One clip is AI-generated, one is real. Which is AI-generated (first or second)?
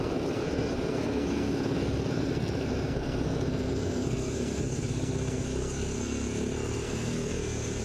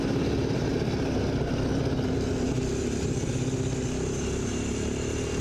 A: first